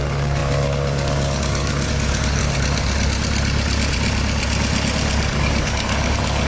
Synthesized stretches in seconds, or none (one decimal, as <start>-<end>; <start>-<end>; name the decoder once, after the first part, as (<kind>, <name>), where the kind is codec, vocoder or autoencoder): 0.0-2.4 (codec, DAC); 5.3-6.5